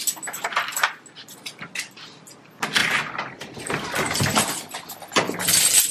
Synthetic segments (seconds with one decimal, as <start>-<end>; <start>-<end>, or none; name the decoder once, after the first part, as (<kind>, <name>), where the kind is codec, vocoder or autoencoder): 2.8-3.6 (vocoder, BigVGAN v2)